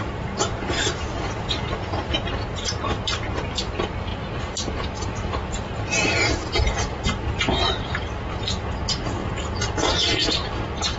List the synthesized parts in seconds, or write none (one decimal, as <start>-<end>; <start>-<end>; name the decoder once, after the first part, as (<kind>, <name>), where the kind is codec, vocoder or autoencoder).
none